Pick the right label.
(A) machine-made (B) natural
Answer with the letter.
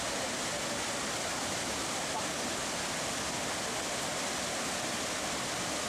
B